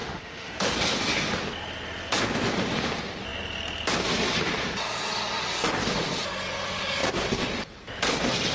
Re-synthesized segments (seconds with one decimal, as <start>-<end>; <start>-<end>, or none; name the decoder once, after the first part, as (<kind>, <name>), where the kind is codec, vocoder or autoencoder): 0.0-0.7 (autoencoder, DAC-VAE)